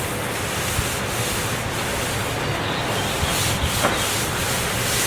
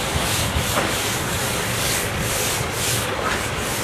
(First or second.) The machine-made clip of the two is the second